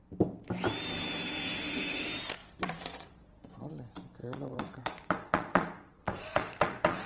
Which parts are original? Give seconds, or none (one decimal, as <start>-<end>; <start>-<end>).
0.0-2.4; 3.7-4.2